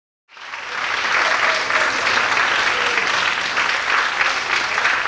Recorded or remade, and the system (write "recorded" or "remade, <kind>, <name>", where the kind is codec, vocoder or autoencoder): recorded